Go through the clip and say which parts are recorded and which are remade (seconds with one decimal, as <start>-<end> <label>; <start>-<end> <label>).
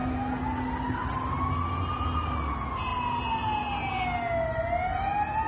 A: 0.0-5.5 recorded